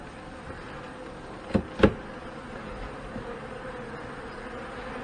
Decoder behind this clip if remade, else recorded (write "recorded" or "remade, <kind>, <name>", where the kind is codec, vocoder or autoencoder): recorded